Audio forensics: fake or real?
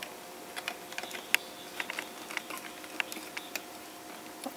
real